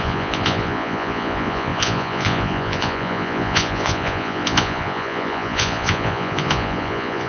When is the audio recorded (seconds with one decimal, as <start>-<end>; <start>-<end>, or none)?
none